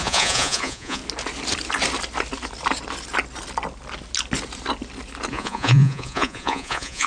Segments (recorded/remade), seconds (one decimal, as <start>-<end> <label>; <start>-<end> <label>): 0.0-1.0 remade; 1.0-5.3 recorded; 5.3-7.1 remade